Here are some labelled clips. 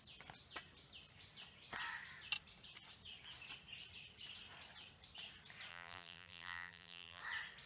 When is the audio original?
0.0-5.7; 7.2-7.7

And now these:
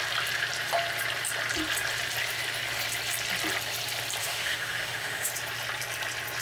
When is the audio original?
0.0-4.2; 5.3-6.4